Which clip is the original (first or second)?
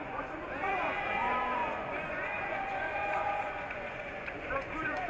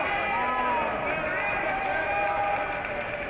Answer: second